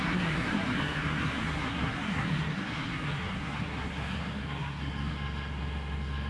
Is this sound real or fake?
fake